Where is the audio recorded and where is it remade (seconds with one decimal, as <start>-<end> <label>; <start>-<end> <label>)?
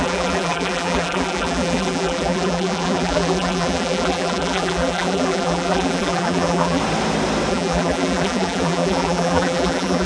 0.0-6.8 remade; 6.8-7.5 recorded; 7.5-10.1 remade